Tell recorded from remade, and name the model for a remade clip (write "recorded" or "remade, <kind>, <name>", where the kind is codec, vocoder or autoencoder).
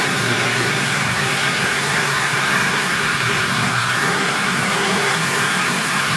remade, codec, SNAC